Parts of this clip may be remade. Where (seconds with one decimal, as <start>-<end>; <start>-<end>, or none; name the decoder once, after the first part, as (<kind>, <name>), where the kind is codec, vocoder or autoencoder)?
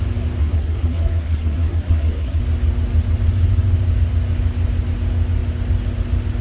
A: 0.4-2.4 (codec, SNAC)